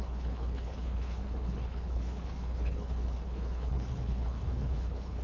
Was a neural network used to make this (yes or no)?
yes